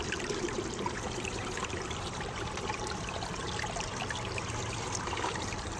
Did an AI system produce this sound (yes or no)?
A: yes